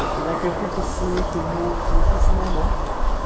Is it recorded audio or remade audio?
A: remade